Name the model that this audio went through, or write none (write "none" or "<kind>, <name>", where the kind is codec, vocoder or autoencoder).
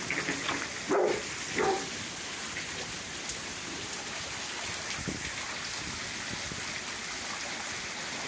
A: none